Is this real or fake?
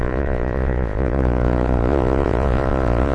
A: fake